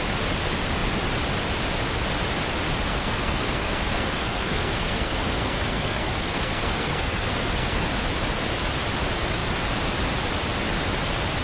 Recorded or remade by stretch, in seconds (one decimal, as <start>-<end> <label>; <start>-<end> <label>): 0.0-2.9 recorded; 2.9-7.8 remade; 7.8-11.4 recorded